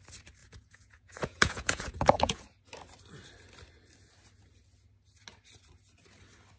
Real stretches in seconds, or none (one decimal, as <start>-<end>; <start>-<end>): 0.0-0.4; 2.4-6.6